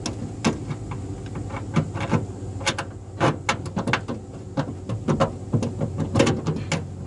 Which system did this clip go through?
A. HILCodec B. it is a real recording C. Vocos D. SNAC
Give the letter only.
B